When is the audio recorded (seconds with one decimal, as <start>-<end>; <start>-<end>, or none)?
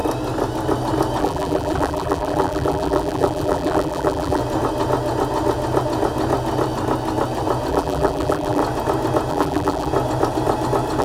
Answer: 0.0-1.2; 4.4-7.7; 8.6-9.3; 9.9-11.0